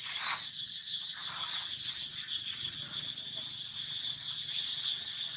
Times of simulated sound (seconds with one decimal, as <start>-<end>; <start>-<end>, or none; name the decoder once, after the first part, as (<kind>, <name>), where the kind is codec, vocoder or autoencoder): 2.0-3.0 (vocoder, Vocos)